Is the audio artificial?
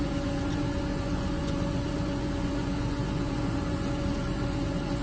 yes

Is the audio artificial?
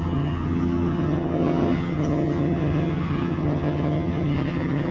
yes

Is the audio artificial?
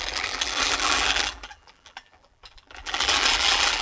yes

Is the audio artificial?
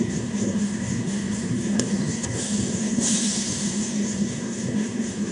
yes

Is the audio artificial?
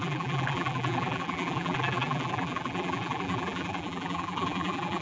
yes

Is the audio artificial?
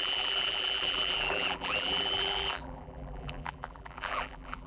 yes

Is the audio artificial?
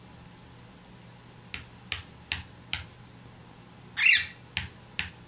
no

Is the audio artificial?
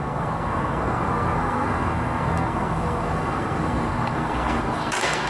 yes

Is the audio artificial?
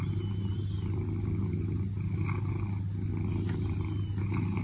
no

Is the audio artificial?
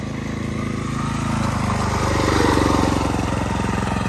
no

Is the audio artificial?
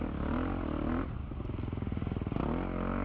no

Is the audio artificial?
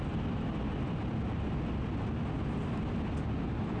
no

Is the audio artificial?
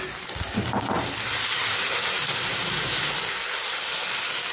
no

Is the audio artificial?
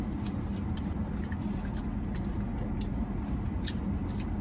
no